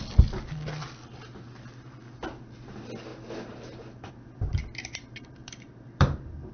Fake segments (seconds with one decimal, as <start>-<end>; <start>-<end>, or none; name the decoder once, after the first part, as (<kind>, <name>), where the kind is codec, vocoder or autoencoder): 3.1-4.1 (vocoder, BigVGAN v2); 4.6-6.5

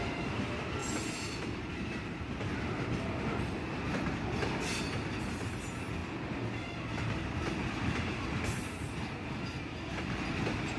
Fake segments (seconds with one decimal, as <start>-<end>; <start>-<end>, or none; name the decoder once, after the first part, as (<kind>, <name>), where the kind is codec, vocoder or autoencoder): none

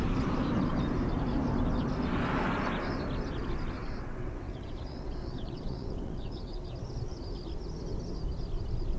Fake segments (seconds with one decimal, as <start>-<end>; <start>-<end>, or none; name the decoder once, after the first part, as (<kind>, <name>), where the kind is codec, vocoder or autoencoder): 3.8-6.7 (vocoder, WaveNeXt)

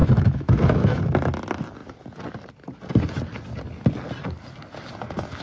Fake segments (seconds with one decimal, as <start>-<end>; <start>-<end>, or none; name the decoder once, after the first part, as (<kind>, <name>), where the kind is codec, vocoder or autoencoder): 0.0-1.0 (autoencoder, DAC-VAE)

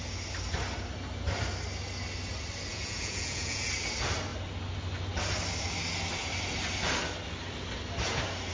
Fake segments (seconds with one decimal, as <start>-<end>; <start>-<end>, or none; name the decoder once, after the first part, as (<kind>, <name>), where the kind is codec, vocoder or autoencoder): 2.7-3.7 (vocoder, Vocos)